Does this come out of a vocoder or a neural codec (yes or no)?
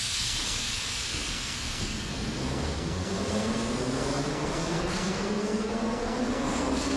yes